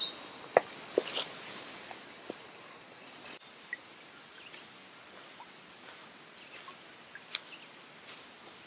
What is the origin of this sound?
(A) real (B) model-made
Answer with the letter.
A